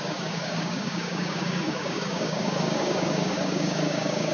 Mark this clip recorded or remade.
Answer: remade